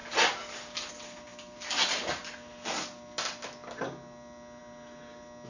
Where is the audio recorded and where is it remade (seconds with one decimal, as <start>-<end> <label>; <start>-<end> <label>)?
0.0-5.5 recorded